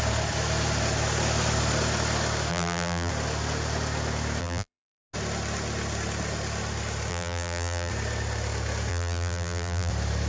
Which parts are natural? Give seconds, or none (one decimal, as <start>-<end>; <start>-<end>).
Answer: 0.0-2.5; 3.1-4.4; 5.0-7.1; 7.9-8.9; 9.9-10.3